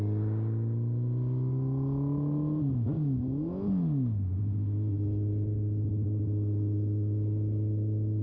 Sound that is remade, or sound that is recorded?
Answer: recorded